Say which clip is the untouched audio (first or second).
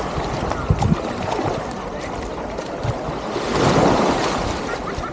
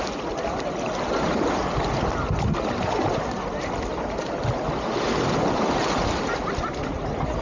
second